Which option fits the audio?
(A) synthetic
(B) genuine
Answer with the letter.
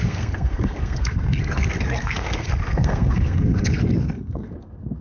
A